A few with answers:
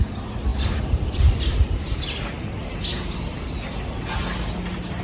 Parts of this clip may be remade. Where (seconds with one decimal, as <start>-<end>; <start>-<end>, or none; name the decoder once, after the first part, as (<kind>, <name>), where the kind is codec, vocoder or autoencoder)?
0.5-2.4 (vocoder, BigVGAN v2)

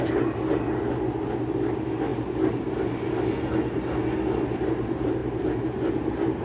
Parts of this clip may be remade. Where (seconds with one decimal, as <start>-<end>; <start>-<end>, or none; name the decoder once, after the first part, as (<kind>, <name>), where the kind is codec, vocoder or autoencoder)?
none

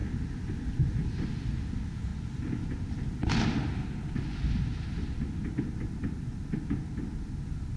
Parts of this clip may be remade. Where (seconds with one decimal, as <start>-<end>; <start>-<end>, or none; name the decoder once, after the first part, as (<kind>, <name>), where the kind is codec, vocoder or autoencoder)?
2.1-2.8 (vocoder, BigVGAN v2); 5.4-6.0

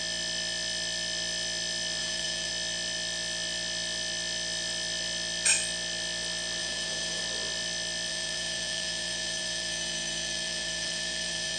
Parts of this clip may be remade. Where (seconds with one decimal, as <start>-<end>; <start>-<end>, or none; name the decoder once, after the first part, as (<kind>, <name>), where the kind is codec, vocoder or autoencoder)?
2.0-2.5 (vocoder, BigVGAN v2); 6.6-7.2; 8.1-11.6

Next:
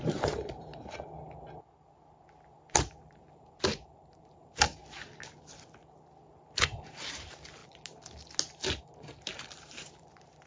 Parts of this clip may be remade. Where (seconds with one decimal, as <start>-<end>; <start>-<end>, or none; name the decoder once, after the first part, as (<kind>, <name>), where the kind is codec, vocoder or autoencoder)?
0.0-0.7 (vocoder, BigVGAN v2); 3.0-4.8; 7.0-7.6; 8.8-10.5

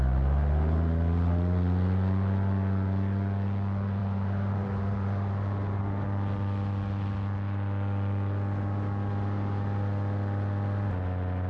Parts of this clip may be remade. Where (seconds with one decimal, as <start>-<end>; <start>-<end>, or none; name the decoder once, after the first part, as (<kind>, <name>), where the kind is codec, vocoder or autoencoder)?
4.0-5.8 (vocoder, BigVGAN v2)

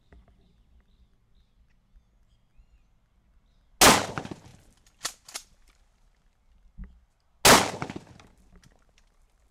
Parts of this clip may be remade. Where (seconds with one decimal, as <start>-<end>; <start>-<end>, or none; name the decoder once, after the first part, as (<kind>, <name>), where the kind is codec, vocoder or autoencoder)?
4.5-5.8 (vocoder, BigVGAN v2)

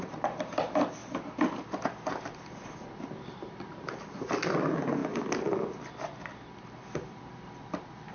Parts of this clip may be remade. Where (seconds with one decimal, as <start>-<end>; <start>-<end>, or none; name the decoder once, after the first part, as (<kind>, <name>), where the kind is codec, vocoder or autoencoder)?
0.0-1.0 (vocoder, BigVGAN v2); 2.8-5.0; 7.1-8.1